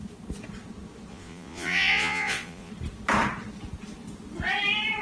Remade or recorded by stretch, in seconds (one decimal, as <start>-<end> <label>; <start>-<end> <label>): 0.0-1.1 recorded; 1.1-2.7 remade; 2.7-5.0 recorded